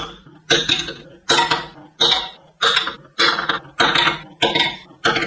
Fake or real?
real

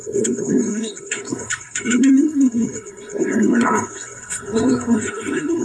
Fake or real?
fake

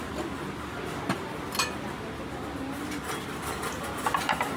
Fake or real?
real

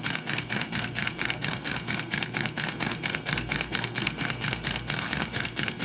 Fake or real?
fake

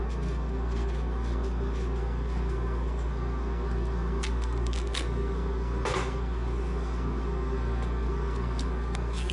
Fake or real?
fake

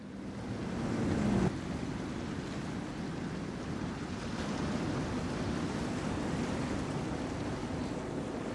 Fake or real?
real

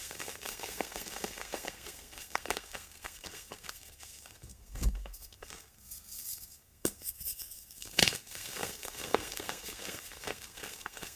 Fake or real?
fake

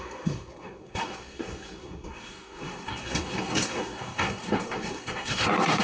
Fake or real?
fake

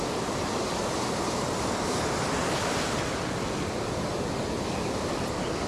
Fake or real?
real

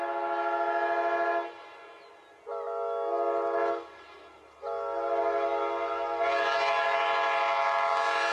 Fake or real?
real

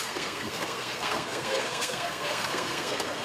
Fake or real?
fake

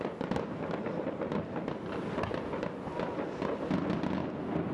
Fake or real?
real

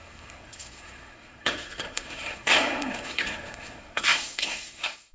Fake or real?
fake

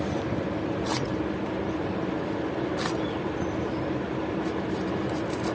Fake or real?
real